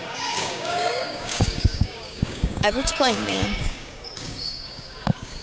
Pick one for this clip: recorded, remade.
remade